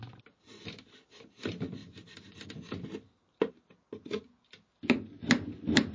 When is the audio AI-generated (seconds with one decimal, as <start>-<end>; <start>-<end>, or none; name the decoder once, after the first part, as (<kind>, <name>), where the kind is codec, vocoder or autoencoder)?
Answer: none